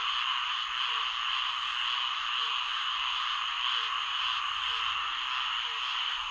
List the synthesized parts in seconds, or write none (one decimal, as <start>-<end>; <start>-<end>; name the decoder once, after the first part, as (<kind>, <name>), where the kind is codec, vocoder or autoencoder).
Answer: none

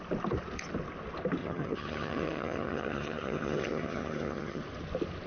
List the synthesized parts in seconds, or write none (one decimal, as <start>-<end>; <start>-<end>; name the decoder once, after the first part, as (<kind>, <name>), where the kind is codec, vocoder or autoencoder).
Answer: 1.4-4.6 (vocoder, HiFi-GAN)